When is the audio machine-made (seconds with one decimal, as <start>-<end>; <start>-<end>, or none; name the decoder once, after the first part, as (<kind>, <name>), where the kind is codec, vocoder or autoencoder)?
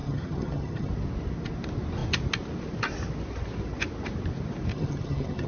0.0-0.9 (vocoder, HiFi-GAN); 4.7-5.5